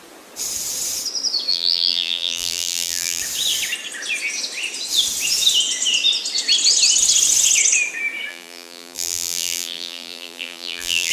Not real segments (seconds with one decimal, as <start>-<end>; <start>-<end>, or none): 1.5-3.2; 8.3-11.1